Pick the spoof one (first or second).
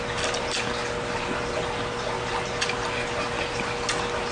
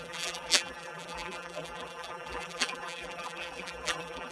second